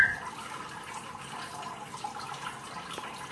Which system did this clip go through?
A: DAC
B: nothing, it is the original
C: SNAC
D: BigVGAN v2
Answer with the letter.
B